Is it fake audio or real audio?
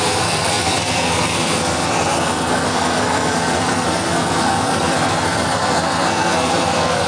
fake